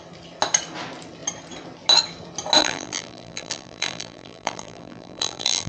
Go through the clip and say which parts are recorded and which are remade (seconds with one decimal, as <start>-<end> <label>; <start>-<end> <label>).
0.0-2.6 recorded; 2.6-5.7 remade